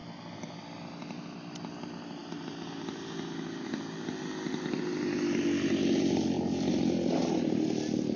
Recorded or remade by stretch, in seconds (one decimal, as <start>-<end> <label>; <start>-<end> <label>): 0.0-8.2 recorded